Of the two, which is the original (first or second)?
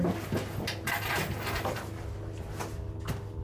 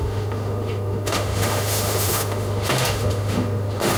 first